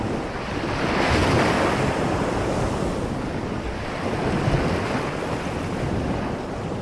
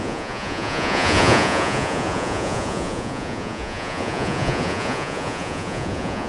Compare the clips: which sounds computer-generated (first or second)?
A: second